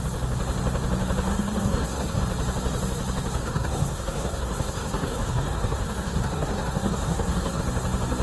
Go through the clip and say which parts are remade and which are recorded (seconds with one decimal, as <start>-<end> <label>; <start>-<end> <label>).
0.0-1.3 recorded; 1.3-2.2 remade; 2.2-3.4 recorded; 3.4-7.6 remade; 7.6-8.2 recorded